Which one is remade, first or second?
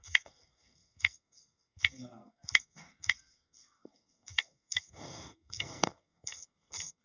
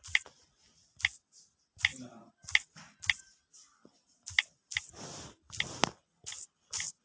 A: first